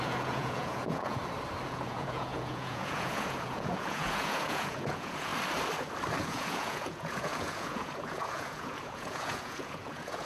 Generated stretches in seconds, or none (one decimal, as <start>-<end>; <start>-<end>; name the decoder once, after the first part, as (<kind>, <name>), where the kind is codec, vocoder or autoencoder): 0.0-1.2 (vocoder, Vocos); 1.7-5.3; 6.2-10.3